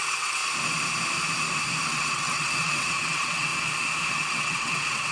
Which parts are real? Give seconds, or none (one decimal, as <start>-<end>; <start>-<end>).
0.4-1.9; 3.5-4.1